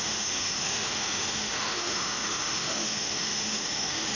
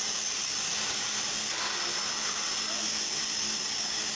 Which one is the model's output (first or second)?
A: first